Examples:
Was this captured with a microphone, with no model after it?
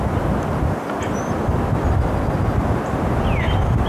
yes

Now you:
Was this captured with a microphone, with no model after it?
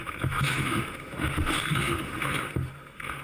no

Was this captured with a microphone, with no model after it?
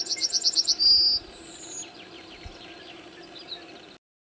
yes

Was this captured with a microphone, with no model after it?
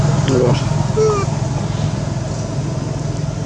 yes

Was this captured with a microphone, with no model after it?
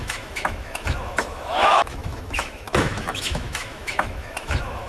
no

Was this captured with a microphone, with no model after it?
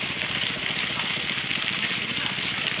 yes